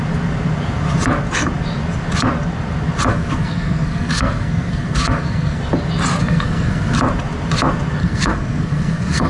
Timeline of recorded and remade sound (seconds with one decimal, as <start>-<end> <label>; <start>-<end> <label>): 0.0-3.1 recorded; 3.1-5.6 remade; 5.6-6.2 recorded; 6.2-7.0 remade; 7.0-8.0 recorded; 8.0-9.3 remade